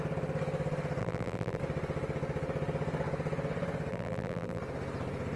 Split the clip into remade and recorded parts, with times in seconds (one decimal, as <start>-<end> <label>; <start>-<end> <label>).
0.0-1.0 recorded; 1.0-1.6 remade; 1.6-3.9 recorded; 3.9-4.6 remade; 4.6-5.4 recorded